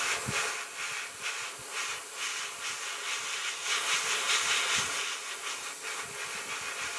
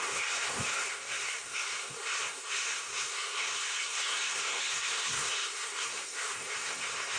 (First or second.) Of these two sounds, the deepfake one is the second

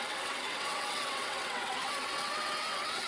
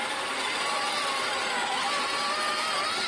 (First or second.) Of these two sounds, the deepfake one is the first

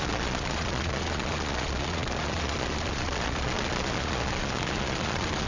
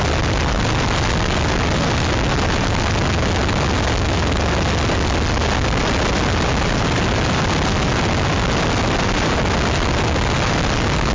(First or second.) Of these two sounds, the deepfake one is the first